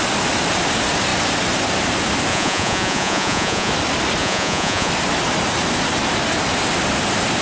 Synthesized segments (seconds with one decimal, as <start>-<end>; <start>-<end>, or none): 2.3-3.7; 4.2-4.9